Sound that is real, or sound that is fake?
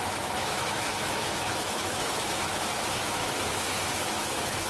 fake